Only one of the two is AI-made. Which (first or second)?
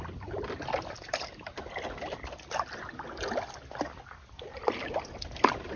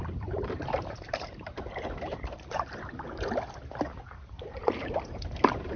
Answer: second